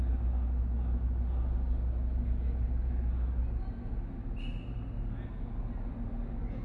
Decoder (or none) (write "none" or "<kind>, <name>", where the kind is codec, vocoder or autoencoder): none